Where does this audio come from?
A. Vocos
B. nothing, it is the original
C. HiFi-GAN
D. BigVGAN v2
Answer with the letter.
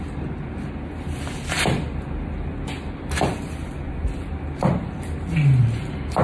B